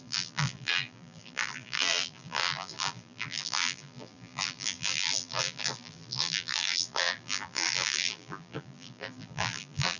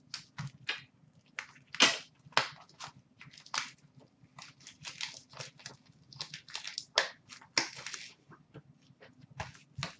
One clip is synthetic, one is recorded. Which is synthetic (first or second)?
first